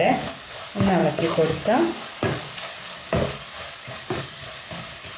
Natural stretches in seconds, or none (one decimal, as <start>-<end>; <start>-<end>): none